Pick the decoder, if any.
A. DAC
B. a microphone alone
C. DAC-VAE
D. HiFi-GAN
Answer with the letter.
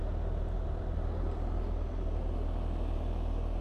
B